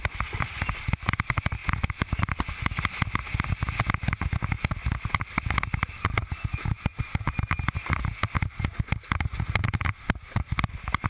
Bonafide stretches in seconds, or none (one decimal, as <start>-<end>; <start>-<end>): 0.0-11.1